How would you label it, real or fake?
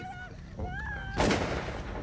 real